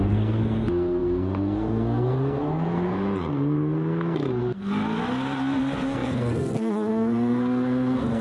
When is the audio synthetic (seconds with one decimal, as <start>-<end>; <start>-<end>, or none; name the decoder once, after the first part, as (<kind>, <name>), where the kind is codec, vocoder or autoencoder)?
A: 0.0-4.8 (codec, SNAC); 5.6-8.2